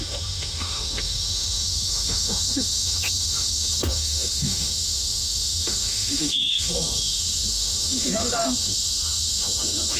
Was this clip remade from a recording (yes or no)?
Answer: yes